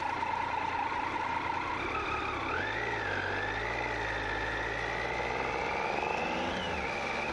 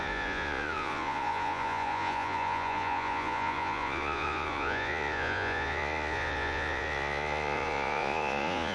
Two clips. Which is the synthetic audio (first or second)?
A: second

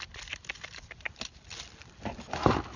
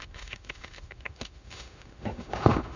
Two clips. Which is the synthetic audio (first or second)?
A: second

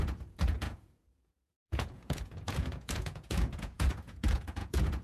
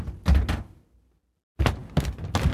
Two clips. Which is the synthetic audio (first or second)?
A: first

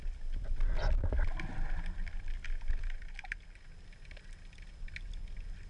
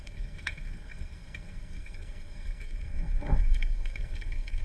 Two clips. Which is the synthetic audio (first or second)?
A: second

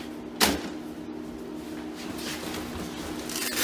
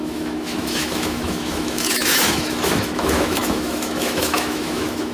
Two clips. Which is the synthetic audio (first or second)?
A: second